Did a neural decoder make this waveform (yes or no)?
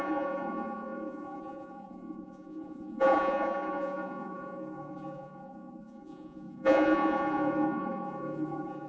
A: yes